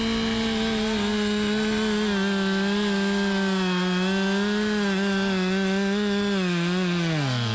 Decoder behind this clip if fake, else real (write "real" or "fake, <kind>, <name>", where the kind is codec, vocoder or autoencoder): real